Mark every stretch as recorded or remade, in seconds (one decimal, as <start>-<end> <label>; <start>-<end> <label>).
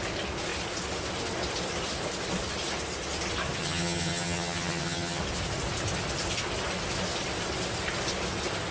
0.0-3.6 recorded; 3.6-5.2 remade; 5.2-8.7 recorded